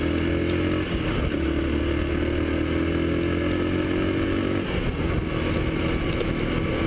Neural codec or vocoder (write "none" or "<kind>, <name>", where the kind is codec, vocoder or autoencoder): none